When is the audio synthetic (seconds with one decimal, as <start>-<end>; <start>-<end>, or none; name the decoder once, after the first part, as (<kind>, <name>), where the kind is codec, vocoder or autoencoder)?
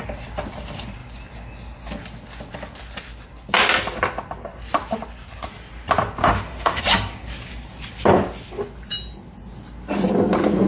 6.2-6.8 (autoencoder, DAC-VAE)